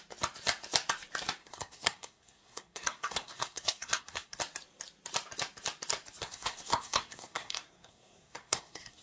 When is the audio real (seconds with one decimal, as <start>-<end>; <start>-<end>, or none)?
0.0-1.4; 4.4-6.2

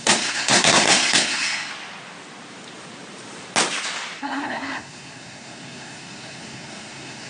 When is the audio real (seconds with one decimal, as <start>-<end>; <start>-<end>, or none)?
1.7-4.2

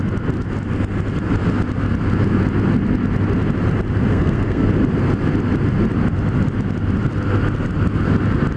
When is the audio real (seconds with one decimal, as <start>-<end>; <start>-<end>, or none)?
0.0-4.1; 4.7-8.6